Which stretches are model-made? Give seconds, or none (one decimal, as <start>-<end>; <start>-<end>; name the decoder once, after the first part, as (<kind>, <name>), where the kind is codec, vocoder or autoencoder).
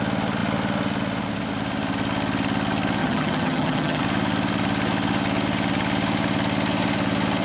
3.0-4.0 (vocoder, HiFi-GAN)